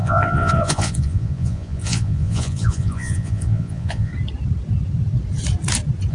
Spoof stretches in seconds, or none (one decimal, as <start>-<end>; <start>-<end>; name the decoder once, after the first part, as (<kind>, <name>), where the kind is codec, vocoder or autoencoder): 0.0-4.1 (vocoder, Vocos)